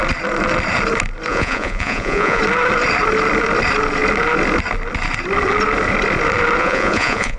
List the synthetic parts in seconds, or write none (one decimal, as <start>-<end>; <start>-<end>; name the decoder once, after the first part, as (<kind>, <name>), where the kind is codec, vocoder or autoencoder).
1.3-2.4 (vocoder, Vocos); 6.6-7.4